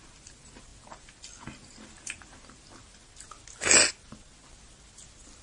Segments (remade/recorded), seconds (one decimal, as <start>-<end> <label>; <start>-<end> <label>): 0.0-5.4 recorded